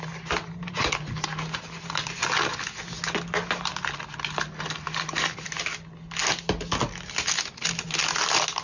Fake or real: real